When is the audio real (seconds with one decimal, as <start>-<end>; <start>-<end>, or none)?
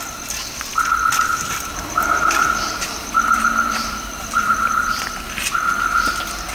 0.0-1.3; 5.0-6.5